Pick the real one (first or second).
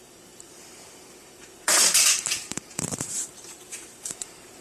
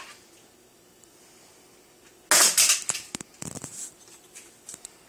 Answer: second